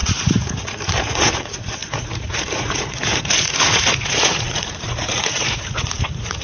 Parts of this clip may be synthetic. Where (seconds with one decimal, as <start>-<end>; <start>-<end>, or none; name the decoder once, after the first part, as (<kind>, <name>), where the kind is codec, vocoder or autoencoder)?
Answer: 0.0-6.4 (vocoder, Vocos)